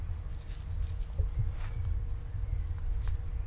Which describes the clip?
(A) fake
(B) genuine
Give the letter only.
B